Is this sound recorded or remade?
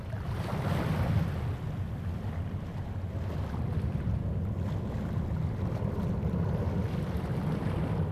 recorded